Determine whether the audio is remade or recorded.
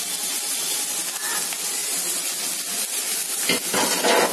recorded